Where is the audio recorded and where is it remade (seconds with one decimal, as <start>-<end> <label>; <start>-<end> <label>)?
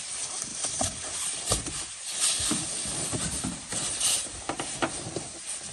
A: 0.0-0.5 recorded; 0.5-3.2 remade; 3.2-5.7 recorded